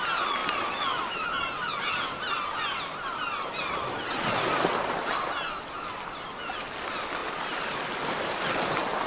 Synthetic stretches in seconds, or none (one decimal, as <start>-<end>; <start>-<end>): none